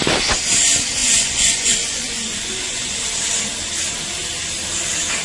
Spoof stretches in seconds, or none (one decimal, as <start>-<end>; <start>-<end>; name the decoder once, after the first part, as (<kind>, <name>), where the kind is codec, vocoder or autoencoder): 1.0-3.0 (vocoder, Vocos)